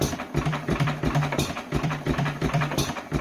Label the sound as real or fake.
fake